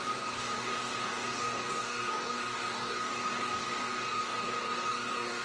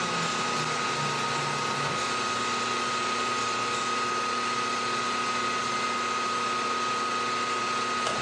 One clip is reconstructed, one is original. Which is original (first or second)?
second